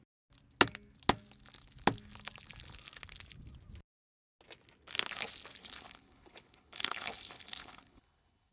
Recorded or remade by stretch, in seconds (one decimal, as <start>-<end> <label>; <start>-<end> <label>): 0.0-5.6 recorded; 5.6-8.5 remade